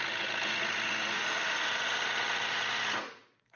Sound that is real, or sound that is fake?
fake